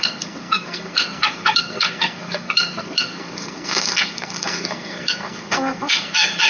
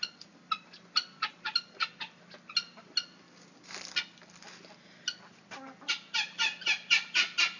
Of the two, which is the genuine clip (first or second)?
second